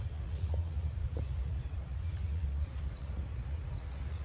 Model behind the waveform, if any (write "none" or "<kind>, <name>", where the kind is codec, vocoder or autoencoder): vocoder, Vocos